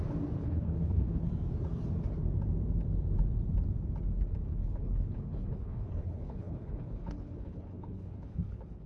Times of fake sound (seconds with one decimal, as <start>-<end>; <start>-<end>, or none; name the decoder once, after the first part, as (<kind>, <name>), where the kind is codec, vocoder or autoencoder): 0.4-1.3 (codec, HILCodec); 4.5-8.9